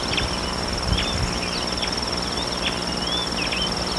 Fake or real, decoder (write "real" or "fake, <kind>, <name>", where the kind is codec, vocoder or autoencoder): real